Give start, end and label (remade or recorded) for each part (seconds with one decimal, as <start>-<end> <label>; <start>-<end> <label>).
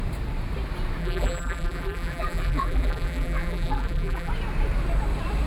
0.0-1.0 recorded; 1.0-4.3 remade; 4.3-5.5 recorded